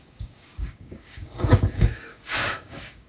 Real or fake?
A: fake